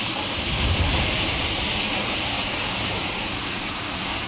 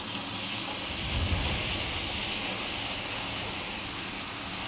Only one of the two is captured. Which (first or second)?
second